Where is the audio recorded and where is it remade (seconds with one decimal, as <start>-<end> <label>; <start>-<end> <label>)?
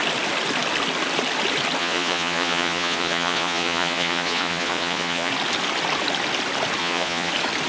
0.0-1.8 recorded; 1.8-5.3 remade; 5.3-6.8 recorded; 6.8-7.3 remade; 7.3-7.7 recorded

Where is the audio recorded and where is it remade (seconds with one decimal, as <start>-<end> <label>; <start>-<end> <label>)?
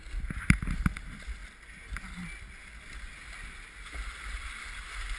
0.0-5.2 recorded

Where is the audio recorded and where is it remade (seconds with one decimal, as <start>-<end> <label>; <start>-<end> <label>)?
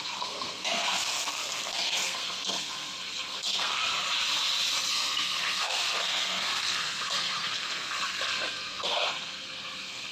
0.0-3.8 remade; 3.8-4.9 recorded; 4.9-10.1 remade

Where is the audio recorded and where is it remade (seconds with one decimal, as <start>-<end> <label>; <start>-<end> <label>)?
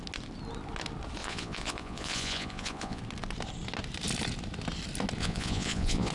0.0-1.2 recorded; 1.2-3.0 remade; 3.0-5.2 recorded; 5.2-6.1 remade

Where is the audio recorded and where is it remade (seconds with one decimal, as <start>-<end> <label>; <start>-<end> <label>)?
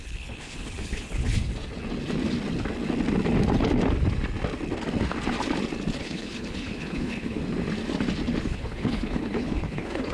0.0-1.5 remade; 1.5-6.0 recorded; 6.0-7.4 remade; 7.4-8.4 recorded; 8.4-10.1 remade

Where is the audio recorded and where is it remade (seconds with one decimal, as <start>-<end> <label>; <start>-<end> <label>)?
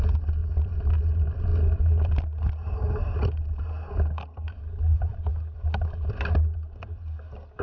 0.0-7.6 recorded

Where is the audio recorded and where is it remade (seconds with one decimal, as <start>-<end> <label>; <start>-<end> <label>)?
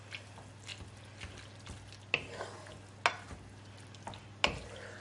0.0-5.0 recorded